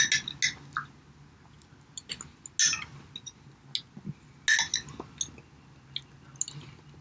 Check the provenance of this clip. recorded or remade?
recorded